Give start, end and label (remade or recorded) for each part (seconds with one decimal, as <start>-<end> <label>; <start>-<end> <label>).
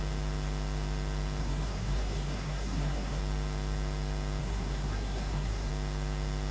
0.0-1.4 recorded; 1.4-3.2 remade; 3.2-4.4 recorded; 4.4-5.7 remade; 5.7-6.5 recorded